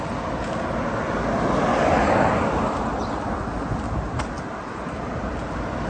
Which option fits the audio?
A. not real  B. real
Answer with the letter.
B